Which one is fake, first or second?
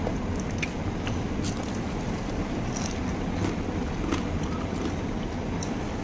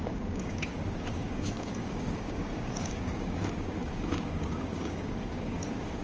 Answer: second